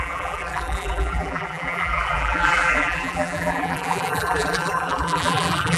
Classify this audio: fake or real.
fake